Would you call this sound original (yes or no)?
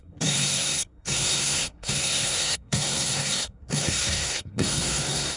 no